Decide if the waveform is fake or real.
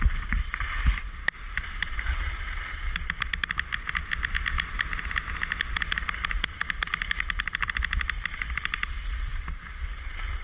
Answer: real